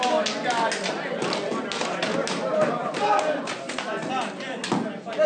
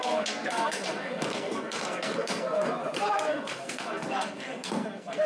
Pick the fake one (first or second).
second